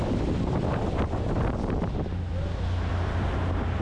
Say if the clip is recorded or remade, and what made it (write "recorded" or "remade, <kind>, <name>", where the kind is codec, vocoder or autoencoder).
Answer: recorded